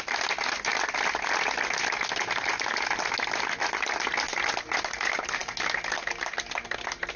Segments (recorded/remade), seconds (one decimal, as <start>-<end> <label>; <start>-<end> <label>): 0.0-7.2 recorded